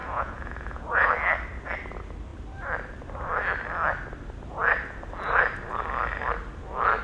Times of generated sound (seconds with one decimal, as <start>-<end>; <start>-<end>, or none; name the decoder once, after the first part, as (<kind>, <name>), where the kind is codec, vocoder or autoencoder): 0.0-1.1 (vocoder, Vocos)